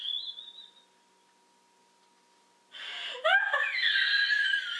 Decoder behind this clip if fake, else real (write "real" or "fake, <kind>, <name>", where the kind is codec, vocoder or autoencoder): real